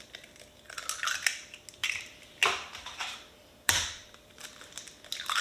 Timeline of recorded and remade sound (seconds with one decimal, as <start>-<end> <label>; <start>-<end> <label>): 0.0-1.8 recorded; 1.8-4.6 remade; 4.6-5.4 recorded